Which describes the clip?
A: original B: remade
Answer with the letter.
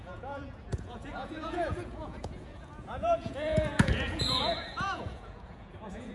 B